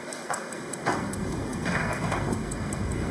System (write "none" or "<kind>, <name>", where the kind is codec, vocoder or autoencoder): codec, SNAC